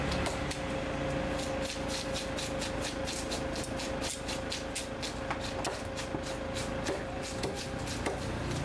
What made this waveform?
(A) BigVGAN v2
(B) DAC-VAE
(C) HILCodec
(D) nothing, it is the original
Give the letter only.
D